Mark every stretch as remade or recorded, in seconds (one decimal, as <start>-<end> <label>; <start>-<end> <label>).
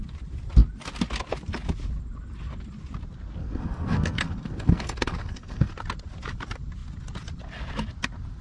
0.0-3.4 recorded; 3.4-5.7 remade; 5.7-8.4 recorded